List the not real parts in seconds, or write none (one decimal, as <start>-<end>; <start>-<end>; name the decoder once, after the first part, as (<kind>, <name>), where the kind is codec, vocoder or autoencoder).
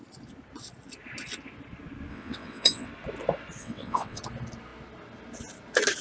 2.1-2.9 (vocoder, WaveNeXt); 3.6-4.2